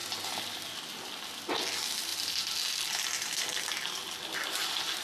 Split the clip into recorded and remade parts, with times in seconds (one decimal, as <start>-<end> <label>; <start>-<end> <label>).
0.0-5.0 recorded